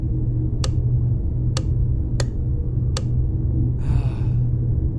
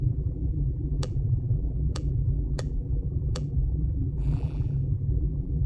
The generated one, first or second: second